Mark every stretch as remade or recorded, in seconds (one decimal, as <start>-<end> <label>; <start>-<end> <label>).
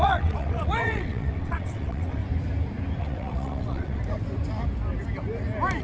0.0-2.2 remade; 2.2-3.0 recorded; 3.0-4.0 remade; 4.0-5.8 recorded